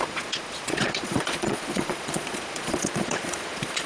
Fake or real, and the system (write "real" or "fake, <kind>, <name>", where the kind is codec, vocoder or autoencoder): fake, vocoder, Vocos